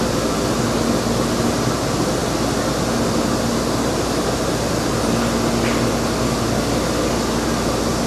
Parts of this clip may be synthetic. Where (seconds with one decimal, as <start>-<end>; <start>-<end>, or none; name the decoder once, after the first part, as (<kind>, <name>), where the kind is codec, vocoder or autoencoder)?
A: none